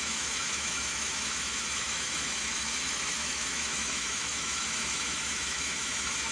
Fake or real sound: fake